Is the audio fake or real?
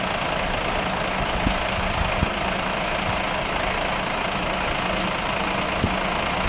real